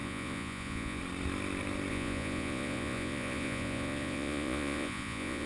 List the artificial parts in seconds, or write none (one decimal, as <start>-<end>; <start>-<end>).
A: 0.0-1.0; 1.9-5.5